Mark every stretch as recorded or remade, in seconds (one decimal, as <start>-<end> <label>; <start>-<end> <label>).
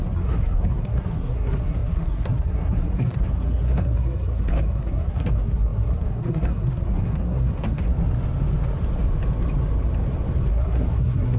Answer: 0.0-7.9 remade; 7.9-10.5 recorded; 10.5-11.4 remade